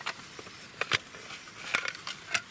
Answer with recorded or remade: recorded